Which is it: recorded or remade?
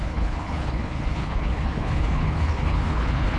remade